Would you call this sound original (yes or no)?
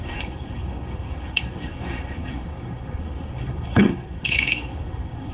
no